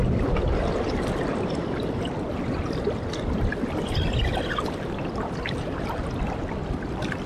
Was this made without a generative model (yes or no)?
yes